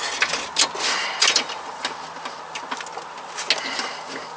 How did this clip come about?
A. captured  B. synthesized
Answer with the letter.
A